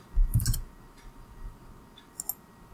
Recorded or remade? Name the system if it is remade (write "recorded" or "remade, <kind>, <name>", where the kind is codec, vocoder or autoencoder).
recorded